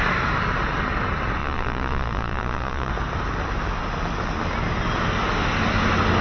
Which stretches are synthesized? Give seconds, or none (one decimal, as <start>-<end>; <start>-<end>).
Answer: 1.4-2.9